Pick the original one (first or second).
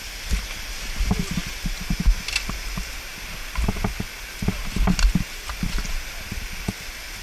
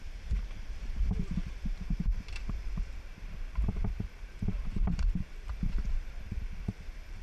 first